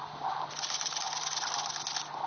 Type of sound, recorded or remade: recorded